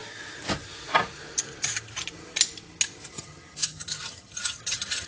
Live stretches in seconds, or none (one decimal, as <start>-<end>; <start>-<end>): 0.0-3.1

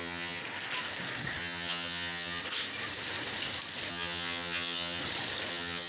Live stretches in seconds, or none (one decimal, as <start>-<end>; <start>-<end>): 0.4-1.4; 2.4-3.9; 5.0-5.5

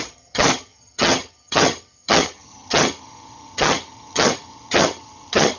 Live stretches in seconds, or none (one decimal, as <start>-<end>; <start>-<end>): none

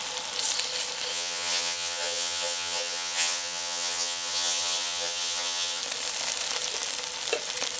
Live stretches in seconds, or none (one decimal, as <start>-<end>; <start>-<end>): 0.0-1.1; 5.8-7.8